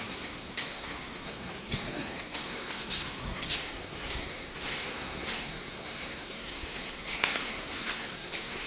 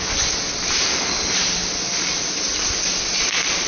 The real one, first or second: second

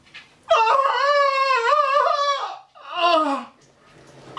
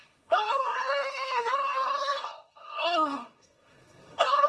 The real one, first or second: first